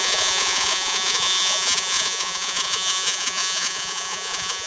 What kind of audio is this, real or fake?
fake